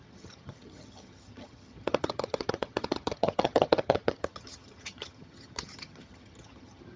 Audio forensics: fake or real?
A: fake